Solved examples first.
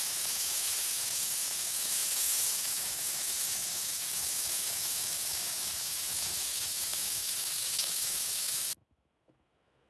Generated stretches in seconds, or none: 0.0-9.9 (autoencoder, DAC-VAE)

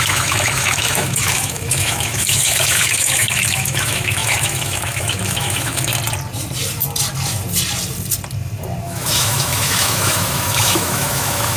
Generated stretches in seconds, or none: 0.0-5.9 (autoencoder, DAC-VAE); 8.8-11.6